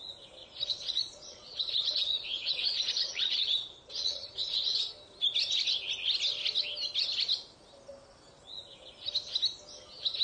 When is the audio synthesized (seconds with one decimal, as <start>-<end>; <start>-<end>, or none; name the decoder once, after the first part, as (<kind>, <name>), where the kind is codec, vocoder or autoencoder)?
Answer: 0.4-4.9 (vocoder, Vocos)